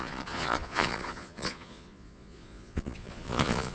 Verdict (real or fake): fake